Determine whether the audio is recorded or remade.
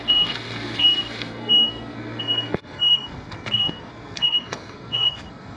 remade